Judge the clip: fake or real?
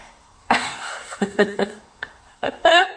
fake